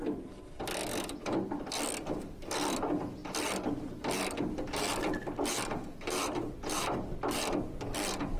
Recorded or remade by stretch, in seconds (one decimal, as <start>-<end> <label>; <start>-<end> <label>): 0.0-8.4 recorded